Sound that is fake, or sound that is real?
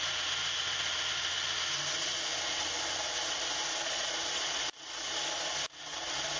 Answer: real